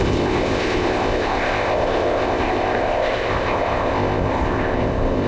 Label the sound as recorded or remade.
remade